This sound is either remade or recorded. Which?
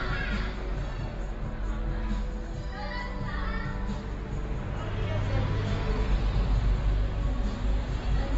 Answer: recorded